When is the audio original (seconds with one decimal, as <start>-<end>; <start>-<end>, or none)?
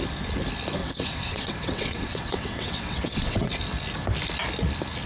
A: 0.0-0.8; 3.5-5.1